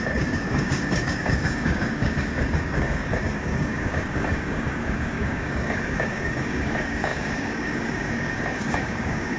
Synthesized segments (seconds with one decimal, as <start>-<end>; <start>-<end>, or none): 0.0-9.4